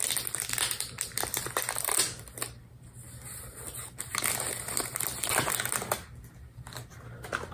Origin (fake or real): real